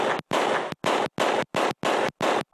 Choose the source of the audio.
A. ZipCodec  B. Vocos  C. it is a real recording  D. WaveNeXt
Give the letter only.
C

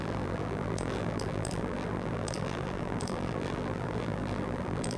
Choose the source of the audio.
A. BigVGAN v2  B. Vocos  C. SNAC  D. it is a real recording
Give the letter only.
A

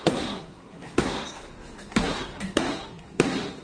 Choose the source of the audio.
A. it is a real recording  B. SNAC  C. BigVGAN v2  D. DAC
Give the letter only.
B